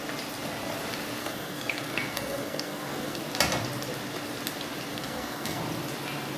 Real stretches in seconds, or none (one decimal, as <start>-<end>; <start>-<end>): 0.0-1.2; 3.2-4.9; 5.6-6.4